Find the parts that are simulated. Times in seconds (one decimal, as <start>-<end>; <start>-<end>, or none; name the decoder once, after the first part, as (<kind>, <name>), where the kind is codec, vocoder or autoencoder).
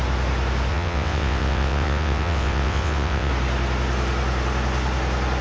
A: 0.7-3.3 (vocoder, WaveNeXt)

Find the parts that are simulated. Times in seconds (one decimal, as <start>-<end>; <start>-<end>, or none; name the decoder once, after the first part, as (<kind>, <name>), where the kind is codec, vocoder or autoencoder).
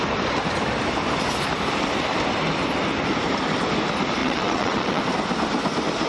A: 4.2-5.0 (vocoder, WaveNeXt)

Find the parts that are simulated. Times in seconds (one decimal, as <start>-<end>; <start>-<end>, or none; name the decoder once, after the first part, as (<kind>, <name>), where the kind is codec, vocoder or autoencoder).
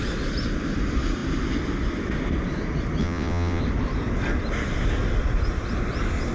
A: 3.0-3.6 (vocoder, WaveNeXt)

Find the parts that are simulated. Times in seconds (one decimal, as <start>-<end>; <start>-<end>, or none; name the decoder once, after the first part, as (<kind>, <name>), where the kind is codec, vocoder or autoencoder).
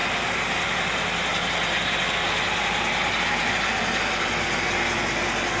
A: none